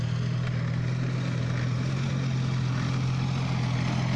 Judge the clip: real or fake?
real